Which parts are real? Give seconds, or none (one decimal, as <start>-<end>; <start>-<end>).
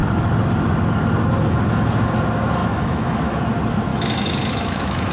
0.0-2.6; 3.4-3.9